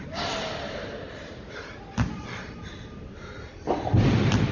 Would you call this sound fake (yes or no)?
no